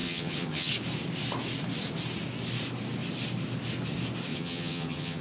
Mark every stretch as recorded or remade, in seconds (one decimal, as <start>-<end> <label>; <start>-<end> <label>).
0.0-0.7 remade; 0.7-4.3 recorded; 4.3-5.2 remade